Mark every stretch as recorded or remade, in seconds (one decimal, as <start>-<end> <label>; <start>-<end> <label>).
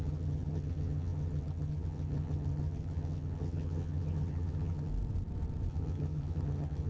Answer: 0.0-4.9 remade; 4.9-5.7 recorded; 5.7-6.9 remade